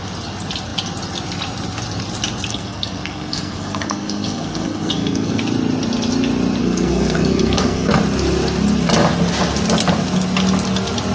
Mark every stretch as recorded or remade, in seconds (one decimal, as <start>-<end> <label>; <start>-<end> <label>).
0.0-2.5 recorded; 2.5-5.4 remade; 5.4-6.6 recorded; 6.6-7.9 remade; 7.9-11.1 recorded